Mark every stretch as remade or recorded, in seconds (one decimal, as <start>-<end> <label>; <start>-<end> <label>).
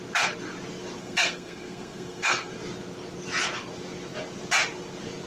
0.0-1.0 recorded; 1.0-2.5 remade; 2.5-5.3 recorded